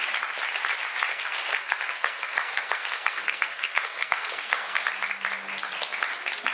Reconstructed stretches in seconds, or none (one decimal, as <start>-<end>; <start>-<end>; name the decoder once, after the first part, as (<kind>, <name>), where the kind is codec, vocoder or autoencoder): 1.1-4.8 (codec, SNAC)